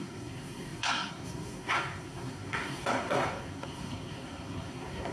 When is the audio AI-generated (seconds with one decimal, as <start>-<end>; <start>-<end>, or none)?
0.0-5.1